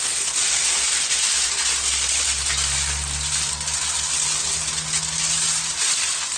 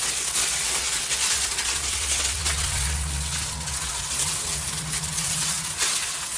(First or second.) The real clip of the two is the first